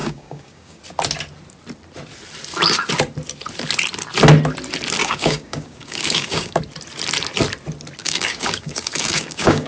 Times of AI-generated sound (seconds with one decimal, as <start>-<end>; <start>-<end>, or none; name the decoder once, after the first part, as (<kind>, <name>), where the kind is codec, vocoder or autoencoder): 0.0-0.8 (codec, DAC); 5.0-6.6; 8.0-9.7